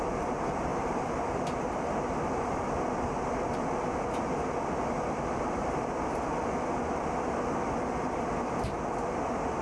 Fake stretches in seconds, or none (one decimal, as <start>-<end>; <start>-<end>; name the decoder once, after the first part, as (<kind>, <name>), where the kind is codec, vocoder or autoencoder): 0.7-2.6 (vocoder, BigVGAN v2)